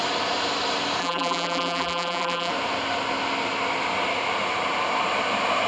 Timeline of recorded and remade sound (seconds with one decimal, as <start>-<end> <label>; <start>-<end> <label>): 0.0-1.0 recorded; 1.0-2.5 remade; 2.5-5.7 recorded